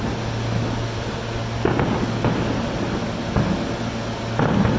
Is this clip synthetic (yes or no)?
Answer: no